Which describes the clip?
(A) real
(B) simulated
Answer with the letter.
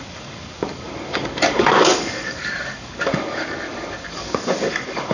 B